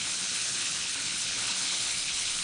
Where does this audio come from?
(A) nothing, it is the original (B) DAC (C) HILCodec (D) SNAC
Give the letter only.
C